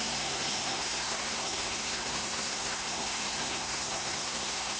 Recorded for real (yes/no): no